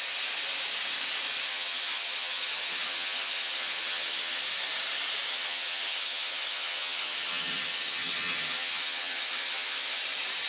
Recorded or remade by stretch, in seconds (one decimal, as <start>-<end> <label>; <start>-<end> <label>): 0.0-1.5 recorded; 1.5-4.4 remade; 4.4-5.3 recorded; 5.3-10.0 remade; 10.0-10.5 recorded